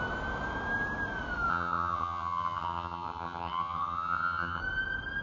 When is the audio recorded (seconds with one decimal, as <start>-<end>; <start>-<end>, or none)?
0.0-1.5; 4.6-5.2